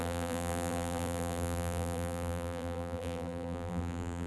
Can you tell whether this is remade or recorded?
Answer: remade